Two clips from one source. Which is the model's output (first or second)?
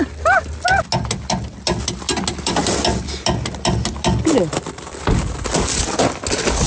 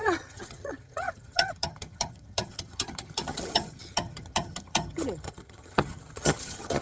second